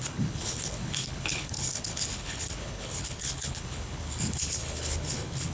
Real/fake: fake